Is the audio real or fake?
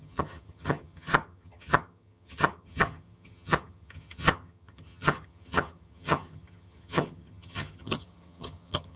fake